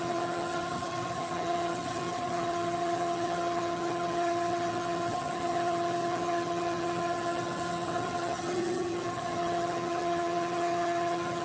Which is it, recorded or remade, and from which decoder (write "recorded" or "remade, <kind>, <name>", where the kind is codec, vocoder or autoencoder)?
remade, vocoder, HiFi-GAN